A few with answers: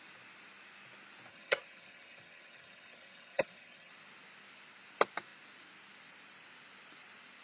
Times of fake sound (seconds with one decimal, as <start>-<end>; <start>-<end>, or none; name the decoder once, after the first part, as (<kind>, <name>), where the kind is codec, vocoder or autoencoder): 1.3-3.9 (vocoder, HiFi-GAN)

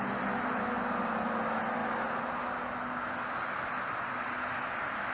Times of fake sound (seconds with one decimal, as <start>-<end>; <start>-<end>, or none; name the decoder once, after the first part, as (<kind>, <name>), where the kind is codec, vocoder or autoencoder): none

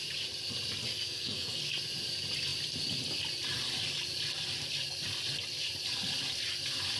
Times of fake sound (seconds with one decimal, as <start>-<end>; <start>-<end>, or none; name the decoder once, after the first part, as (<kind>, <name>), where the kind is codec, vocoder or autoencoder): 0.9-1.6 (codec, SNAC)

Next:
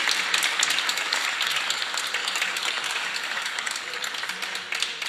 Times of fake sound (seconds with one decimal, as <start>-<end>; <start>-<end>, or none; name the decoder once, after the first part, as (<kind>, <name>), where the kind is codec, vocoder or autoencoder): 0.9-1.8 (codec, DAC); 2.2-4.1